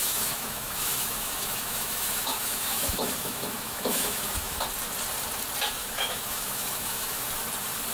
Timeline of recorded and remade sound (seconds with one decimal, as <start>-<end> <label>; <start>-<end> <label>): 0.0-4.6 remade; 4.6-5.8 recorded; 5.8-7.3 remade; 7.3-7.9 recorded